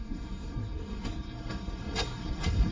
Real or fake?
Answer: fake